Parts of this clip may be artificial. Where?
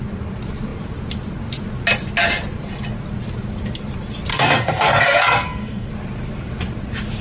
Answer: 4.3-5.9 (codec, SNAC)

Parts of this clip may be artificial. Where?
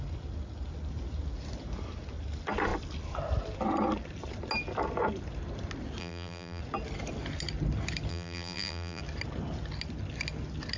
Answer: 6.0-6.6 (vocoder, BigVGAN v2); 8.1-9.0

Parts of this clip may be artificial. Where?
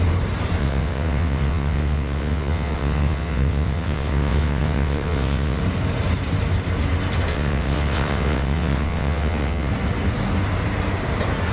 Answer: 0.6-5.6 (vocoder, WaveNeXt); 7.3-9.7